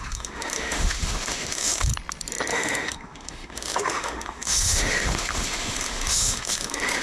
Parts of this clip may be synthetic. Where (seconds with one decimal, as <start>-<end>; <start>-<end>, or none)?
0.0-1.9; 2.5-7.0